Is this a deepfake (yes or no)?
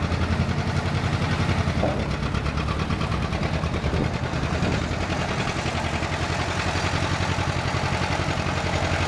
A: no